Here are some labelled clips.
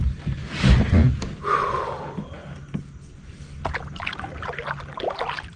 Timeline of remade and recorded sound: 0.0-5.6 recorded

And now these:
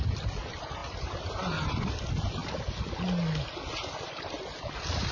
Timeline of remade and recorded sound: 0.0-5.1 recorded

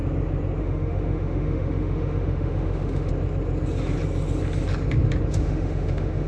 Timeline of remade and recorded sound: 0.0-0.6 recorded; 0.6-3.1 remade; 3.1-5.3 recorded; 5.3-6.3 remade